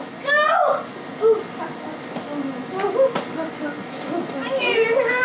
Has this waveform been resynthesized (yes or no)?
no